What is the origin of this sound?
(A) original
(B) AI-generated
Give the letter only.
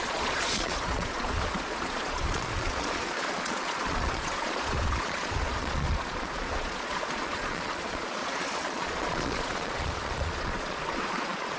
B